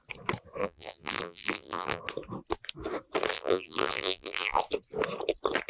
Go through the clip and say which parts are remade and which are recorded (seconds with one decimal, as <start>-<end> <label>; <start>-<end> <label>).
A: 0.0-0.6 recorded; 0.6-2.0 remade; 2.0-3.3 recorded; 3.3-4.6 remade; 4.6-5.7 recorded